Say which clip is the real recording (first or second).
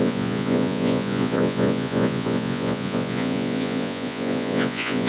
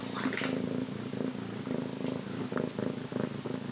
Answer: second